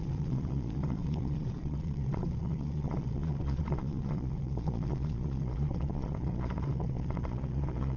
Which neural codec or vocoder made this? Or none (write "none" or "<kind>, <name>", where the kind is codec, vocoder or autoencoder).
vocoder, Vocos